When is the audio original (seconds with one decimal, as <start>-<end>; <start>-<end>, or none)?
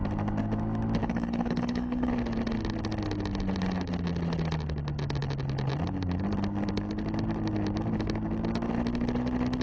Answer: 0.0-1.0; 2.1-9.6